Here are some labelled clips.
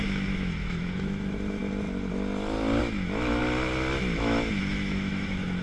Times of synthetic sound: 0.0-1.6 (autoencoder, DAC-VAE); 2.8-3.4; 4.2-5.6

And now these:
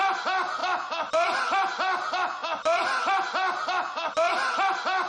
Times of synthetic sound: none